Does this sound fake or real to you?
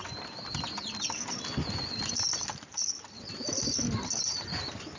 real